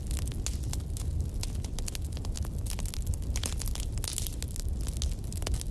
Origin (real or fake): real